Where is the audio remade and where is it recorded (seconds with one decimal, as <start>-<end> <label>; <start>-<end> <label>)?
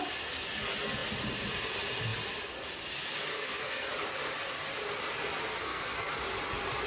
0.0-3.3 recorded; 3.3-3.9 remade; 3.9-5.6 recorded; 5.6-6.1 remade; 6.1-6.9 recorded